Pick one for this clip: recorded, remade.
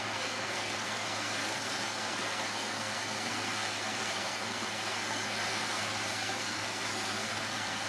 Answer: remade